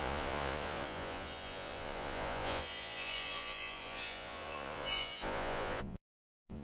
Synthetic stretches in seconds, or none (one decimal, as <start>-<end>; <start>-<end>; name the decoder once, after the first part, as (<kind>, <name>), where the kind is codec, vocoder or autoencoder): 0.0-6.6 (vocoder, Vocos)

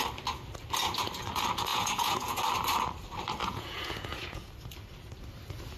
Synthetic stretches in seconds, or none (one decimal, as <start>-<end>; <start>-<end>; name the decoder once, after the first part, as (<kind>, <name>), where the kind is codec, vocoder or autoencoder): 1.7-2.4 (vocoder, Vocos); 3.4-4.5